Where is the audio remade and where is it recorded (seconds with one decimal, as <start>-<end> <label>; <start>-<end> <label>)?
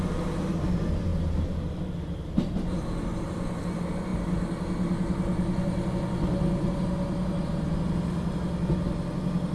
0.0-9.5 recorded